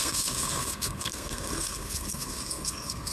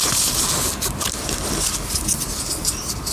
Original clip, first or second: second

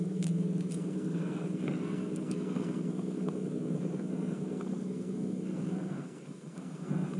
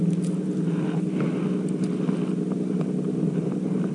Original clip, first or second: second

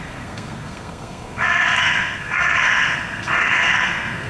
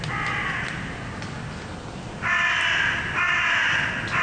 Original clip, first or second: second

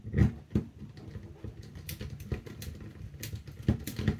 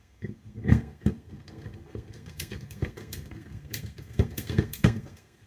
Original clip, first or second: first